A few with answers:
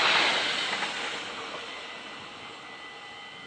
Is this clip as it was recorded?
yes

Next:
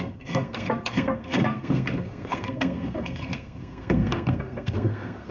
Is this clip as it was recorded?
no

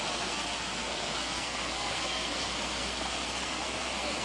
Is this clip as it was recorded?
no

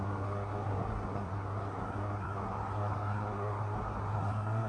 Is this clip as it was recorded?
no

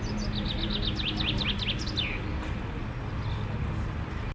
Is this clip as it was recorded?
yes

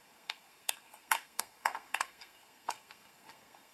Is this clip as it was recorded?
no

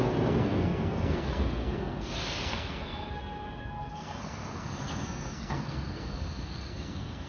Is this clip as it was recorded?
no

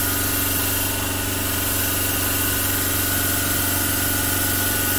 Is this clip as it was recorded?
yes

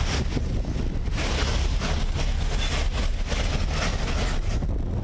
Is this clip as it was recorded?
yes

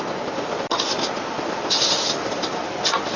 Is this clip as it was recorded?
yes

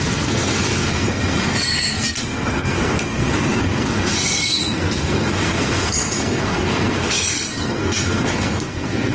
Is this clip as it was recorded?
no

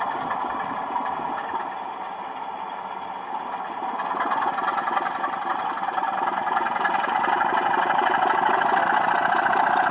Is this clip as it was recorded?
yes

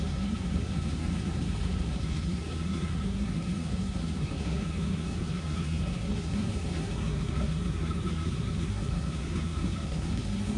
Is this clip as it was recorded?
no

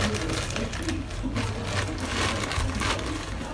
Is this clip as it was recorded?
yes